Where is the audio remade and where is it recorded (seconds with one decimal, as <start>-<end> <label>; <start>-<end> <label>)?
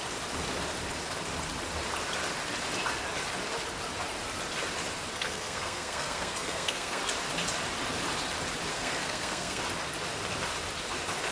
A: 0.0-5.1 recorded; 5.1-7.0 remade; 7.0-8.7 recorded; 8.7-9.6 remade; 9.6-11.3 recorded